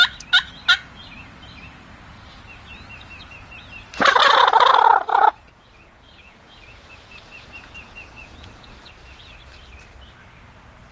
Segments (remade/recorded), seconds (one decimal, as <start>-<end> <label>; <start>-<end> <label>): 0.0-5.1 recorded; 5.1-8.9 remade; 8.9-10.9 recorded